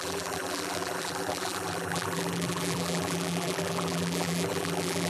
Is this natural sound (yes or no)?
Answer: no